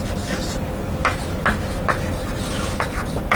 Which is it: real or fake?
real